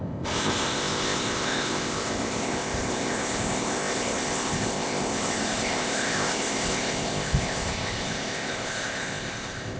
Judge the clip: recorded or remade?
remade